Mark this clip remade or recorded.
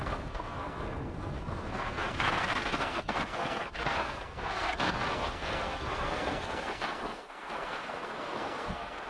remade